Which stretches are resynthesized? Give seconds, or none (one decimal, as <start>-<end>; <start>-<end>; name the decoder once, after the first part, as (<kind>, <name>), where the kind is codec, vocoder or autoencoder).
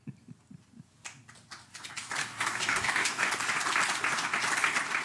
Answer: 2.2-3.3 (codec, DAC)